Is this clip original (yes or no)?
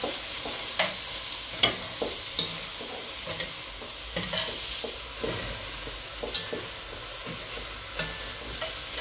yes